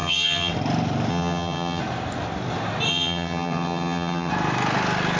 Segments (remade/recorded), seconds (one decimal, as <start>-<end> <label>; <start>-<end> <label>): 0.0-0.5 remade; 0.5-1.1 recorded; 1.1-1.8 remade; 1.8-2.9 recorded; 2.9-4.3 remade; 4.3-5.2 recorded

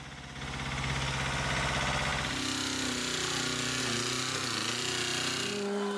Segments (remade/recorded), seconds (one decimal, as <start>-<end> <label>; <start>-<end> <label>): 0.0-6.0 recorded

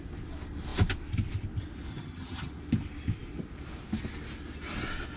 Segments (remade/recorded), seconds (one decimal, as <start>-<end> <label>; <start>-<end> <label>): 0.0-1.9 recorded; 1.9-2.5 remade; 2.5-5.2 recorded

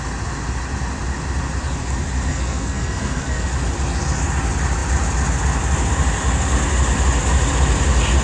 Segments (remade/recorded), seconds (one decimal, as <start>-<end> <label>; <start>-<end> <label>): 0.0-2.3 recorded; 2.3-3.5 remade; 3.5-8.2 recorded